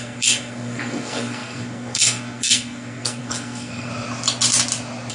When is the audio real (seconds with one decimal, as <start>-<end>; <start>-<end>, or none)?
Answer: 3.9-5.1